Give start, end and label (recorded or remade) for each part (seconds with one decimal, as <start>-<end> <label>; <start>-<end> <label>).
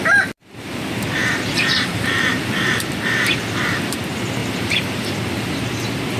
0.0-1.2 recorded; 1.2-4.0 remade; 4.0-4.4 recorded; 4.4-5.1 remade; 5.1-6.2 recorded